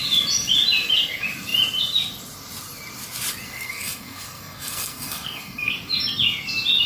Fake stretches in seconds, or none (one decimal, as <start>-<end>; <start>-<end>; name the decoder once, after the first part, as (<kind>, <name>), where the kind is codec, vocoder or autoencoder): 3.4-5.7 (codec, SNAC)